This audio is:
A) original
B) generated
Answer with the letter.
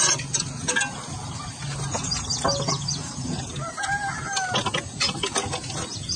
A